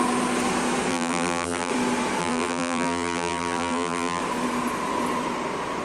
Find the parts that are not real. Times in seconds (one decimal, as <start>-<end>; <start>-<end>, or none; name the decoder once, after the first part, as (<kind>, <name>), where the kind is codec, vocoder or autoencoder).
0.9-1.7 (vocoder, BigVGAN v2); 2.2-4.2